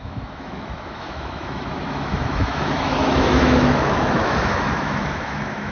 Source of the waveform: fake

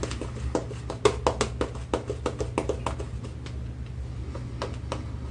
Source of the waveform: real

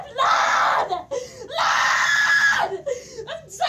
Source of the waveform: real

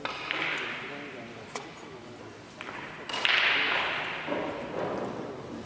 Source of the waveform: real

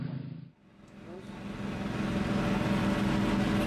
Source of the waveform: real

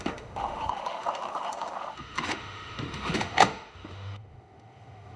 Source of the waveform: fake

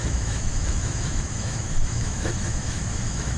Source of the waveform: fake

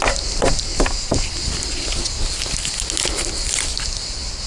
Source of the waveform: real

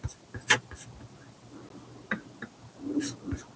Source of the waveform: real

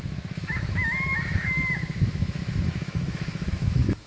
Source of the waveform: fake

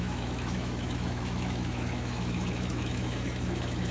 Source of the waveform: fake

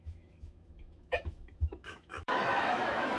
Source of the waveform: fake